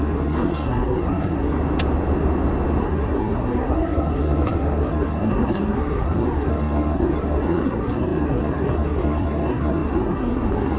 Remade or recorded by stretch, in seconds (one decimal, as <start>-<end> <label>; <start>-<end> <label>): 0.0-1.6 remade; 1.6-2.8 recorded; 2.8-10.8 remade